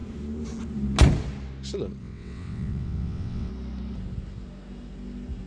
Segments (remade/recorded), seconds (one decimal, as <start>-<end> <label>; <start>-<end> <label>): 0.0-2.0 recorded; 2.0-3.5 remade; 3.5-5.5 recorded